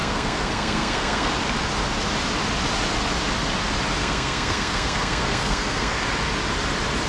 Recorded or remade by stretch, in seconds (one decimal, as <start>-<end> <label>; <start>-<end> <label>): 0.0-1.3 remade; 1.3-4.0 recorded; 4.0-6.0 remade; 6.0-7.1 recorded